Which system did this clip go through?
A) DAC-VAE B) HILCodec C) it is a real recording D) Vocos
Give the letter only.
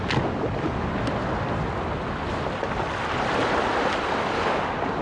C